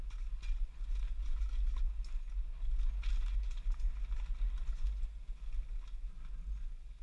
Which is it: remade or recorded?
recorded